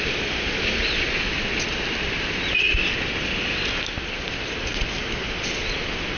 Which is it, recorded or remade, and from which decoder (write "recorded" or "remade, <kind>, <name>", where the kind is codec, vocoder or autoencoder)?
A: recorded